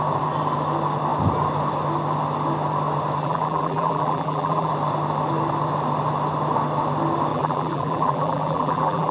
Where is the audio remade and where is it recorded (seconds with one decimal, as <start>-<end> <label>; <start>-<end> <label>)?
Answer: 0.0-3.2 recorded; 3.2-4.7 remade; 4.7-7.3 recorded; 7.3-9.1 remade